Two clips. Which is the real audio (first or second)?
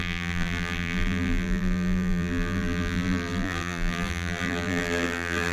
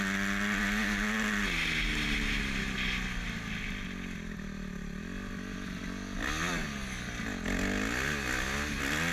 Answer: second